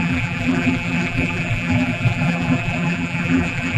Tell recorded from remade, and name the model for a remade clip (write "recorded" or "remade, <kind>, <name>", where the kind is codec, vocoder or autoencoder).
remade, vocoder, BigVGAN v2